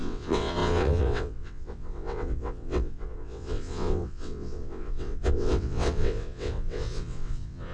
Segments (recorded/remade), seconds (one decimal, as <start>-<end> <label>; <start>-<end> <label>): 0.0-7.7 remade